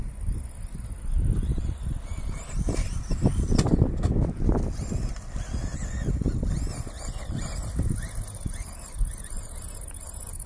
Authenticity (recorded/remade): recorded